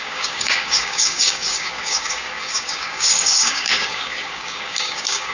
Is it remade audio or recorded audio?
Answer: remade